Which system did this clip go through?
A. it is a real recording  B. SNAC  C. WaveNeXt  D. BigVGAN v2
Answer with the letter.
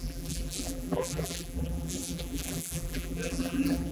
D